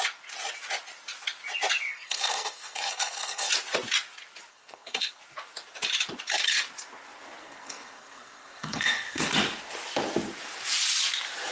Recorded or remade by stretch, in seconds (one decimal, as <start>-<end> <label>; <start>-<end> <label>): 0.0-1.9 recorded; 1.9-3.5 remade; 3.5-4.5 recorded; 4.5-5.2 remade; 5.2-7.4 recorded; 7.4-9.3 remade; 9.3-11.5 recorded